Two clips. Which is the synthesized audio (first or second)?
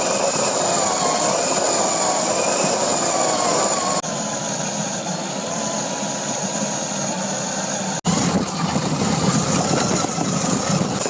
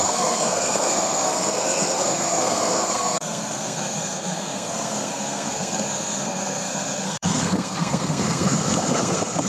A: second